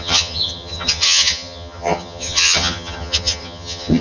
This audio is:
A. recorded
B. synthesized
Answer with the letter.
B